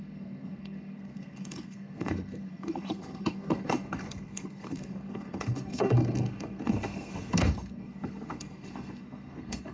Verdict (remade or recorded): remade